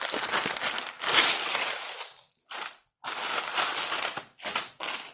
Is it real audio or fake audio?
real